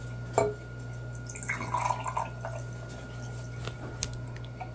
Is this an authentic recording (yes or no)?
yes